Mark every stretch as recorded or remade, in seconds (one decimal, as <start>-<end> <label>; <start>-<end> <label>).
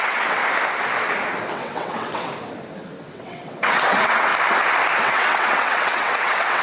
0.0-0.4 remade; 0.4-1.5 recorded; 1.5-2.3 remade; 2.3-3.0 recorded; 3.0-4.3 remade; 4.3-5.0 recorded; 5.0-6.6 remade